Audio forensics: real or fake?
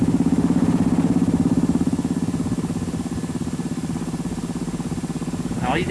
real